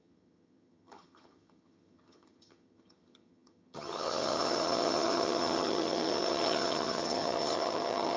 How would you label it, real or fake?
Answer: fake